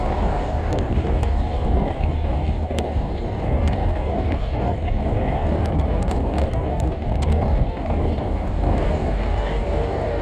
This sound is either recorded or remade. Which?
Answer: remade